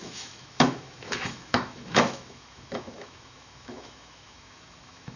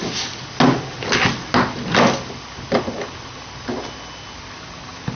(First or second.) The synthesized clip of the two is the first